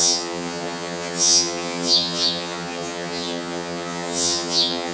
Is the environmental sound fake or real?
fake